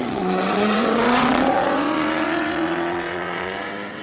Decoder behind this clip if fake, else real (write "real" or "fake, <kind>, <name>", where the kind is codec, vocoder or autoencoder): fake, vocoder, WaveNeXt